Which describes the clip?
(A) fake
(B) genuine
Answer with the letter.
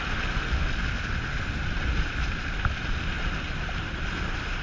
B